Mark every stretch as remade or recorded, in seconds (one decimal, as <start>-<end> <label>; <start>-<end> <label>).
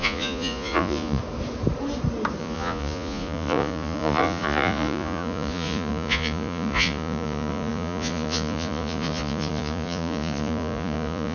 0.0-1.2 remade; 1.2-2.4 recorded; 2.4-11.3 remade